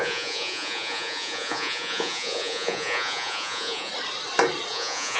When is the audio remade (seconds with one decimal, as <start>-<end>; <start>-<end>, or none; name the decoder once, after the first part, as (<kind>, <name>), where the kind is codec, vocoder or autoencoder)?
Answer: 0.0-3.9 (vocoder, Vocos); 4.7-5.2